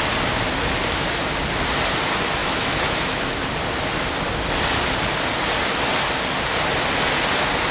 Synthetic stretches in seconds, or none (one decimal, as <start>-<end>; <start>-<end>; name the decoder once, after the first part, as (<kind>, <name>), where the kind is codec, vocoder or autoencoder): 2.4-3.3 (autoencoder, DAC-VAE)